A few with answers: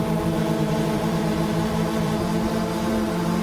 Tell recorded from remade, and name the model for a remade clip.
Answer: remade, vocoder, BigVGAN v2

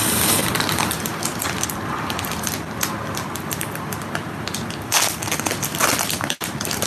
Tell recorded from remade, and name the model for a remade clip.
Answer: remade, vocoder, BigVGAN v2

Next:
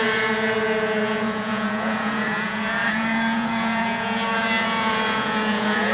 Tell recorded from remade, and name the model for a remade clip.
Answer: remade, vocoder, Vocos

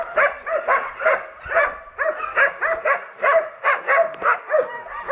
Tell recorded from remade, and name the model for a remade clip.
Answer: recorded